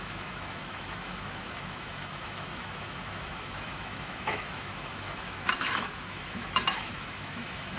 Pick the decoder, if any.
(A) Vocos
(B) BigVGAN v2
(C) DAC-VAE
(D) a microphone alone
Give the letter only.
C